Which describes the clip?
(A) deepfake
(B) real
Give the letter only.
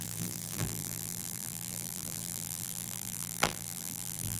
A